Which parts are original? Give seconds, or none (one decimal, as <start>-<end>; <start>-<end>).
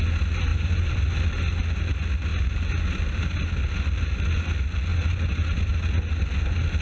0.0-0.5; 1.1-2.3; 3.2-4.9; 5.7-6.8